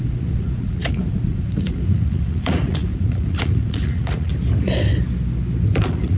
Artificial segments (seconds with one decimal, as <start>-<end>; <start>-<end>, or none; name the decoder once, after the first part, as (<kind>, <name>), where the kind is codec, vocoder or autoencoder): 0.0-4.3 (vocoder, Vocos); 5.8-6.2